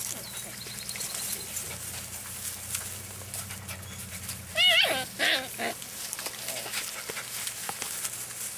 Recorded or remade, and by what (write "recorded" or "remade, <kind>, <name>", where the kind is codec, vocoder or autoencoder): recorded